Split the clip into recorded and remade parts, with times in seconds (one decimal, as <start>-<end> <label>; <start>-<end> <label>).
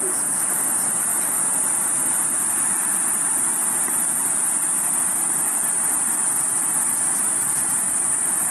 0.0-8.5 recorded